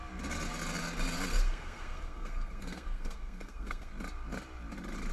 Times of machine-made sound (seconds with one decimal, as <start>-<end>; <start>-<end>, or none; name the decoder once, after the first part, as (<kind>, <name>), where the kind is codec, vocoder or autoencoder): 1.3-3.9 (codec, SNAC)